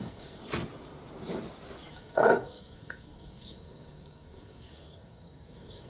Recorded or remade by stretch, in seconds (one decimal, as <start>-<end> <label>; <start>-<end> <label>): 0.0-0.4 remade; 0.4-1.9 recorded; 1.9-5.9 remade